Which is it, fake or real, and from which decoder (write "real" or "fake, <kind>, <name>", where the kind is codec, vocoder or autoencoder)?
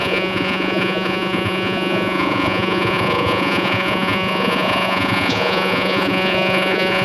fake, vocoder, Vocos